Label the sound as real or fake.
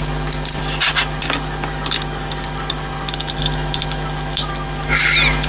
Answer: real